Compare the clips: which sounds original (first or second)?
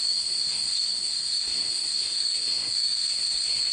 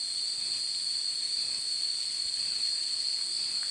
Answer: second